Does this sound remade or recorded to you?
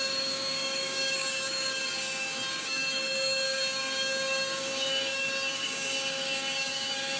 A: remade